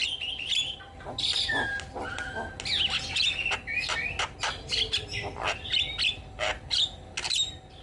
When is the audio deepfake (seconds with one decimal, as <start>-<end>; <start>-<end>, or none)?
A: none